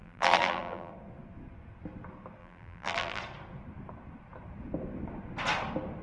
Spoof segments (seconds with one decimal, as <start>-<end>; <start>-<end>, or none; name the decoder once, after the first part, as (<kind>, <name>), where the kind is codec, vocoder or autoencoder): 0.0-0.9 (vocoder, BigVGAN v2); 2.4-3.2